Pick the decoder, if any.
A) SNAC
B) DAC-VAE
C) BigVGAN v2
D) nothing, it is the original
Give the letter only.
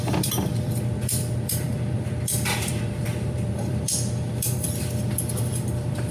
C